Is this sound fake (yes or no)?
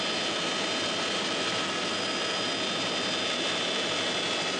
no